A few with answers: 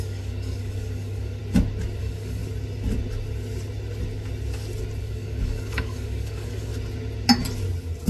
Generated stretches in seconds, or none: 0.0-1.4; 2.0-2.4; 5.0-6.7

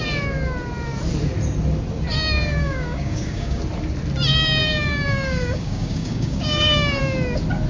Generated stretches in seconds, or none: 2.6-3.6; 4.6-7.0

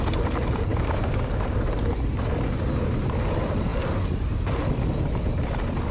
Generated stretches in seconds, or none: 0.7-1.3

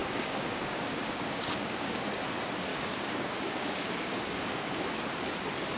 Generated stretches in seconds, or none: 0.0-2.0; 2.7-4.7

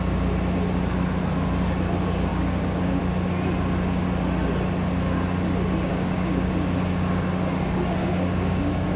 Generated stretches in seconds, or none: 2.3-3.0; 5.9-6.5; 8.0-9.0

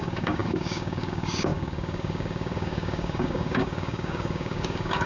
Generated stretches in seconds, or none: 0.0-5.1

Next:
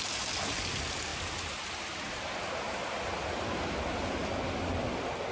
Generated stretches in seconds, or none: none

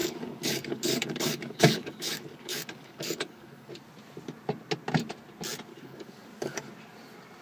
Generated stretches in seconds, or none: 0.0-3.7; 5.7-6.7